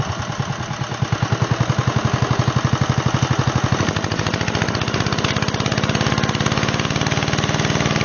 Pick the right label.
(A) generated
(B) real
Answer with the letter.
B